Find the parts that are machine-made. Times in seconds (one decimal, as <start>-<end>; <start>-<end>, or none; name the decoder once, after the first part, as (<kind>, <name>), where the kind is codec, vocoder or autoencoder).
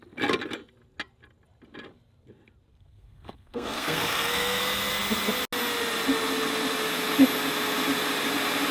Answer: 2.7-4.6 (codec, SNAC)